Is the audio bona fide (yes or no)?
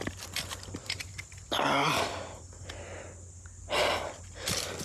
yes